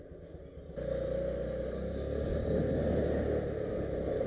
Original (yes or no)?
yes